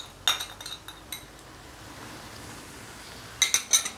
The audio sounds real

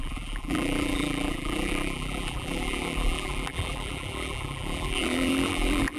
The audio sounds fake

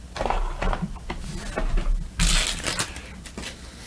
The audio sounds real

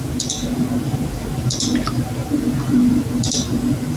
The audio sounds real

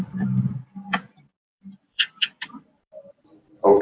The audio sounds fake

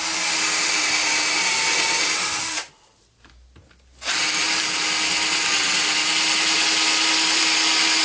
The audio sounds real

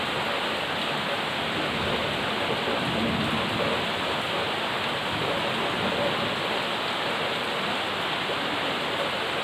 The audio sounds real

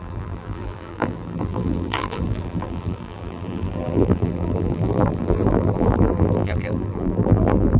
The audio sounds fake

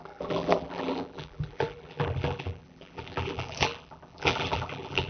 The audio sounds fake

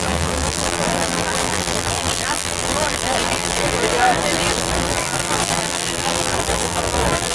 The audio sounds fake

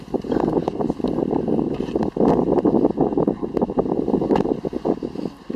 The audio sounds real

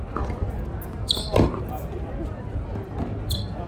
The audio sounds real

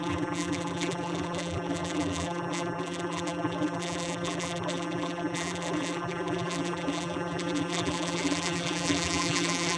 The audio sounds fake